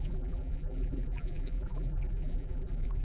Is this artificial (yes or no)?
yes